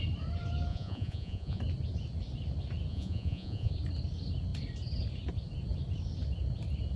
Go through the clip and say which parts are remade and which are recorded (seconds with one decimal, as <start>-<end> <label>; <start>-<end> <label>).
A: 0.0-0.7 recorded; 0.7-1.6 remade; 1.6-2.9 recorded; 2.9-3.7 remade; 3.7-7.0 recorded